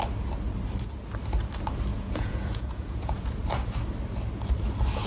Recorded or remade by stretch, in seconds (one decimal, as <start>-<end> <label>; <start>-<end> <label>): 0.0-1.9 recorded; 1.9-3.3 remade; 3.3-5.1 recorded